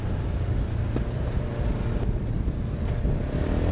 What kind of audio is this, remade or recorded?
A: recorded